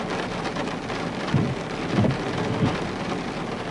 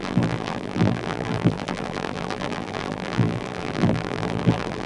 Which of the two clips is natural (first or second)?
first